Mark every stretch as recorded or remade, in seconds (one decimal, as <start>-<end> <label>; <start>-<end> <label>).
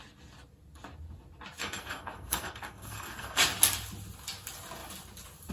0.0-1.6 recorded; 1.6-3.4 remade; 3.4-5.5 recorded